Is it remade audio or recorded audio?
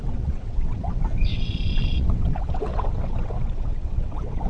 remade